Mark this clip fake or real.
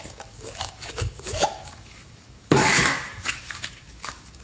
fake